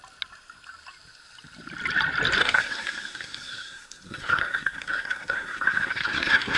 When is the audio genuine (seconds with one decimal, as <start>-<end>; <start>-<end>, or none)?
0.0-2.4